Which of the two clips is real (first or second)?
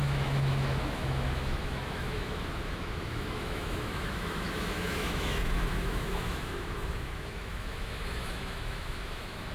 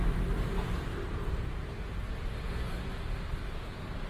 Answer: second